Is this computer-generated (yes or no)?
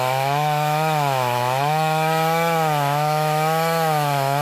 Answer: yes